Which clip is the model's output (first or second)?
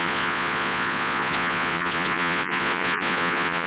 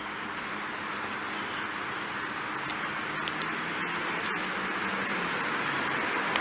first